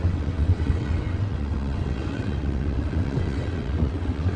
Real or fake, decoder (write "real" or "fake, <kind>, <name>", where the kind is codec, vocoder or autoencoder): fake, vocoder, WaveNeXt